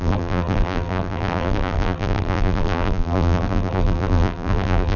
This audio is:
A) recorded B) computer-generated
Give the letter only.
B